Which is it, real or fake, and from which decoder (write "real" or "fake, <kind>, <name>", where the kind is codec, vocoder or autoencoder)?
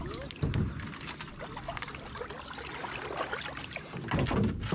real